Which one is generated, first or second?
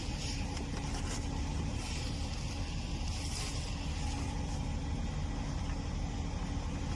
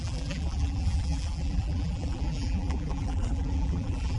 second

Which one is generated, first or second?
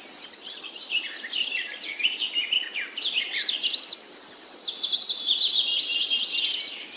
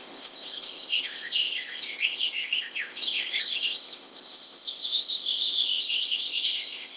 second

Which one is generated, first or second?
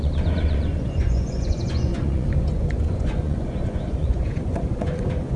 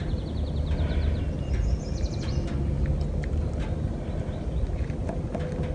first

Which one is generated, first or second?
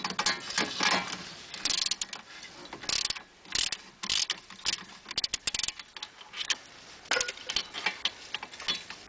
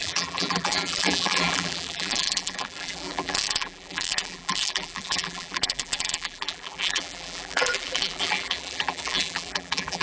second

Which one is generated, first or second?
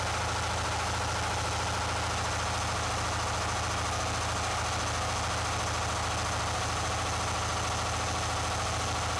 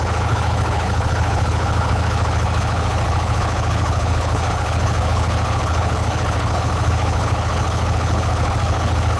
second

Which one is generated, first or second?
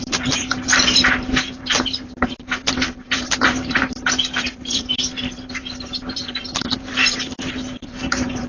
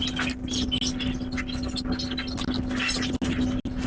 first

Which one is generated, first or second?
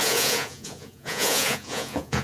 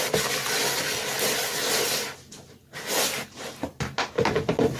first